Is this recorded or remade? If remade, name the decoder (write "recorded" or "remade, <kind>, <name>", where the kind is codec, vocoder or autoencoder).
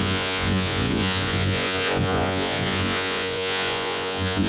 remade, vocoder, Vocos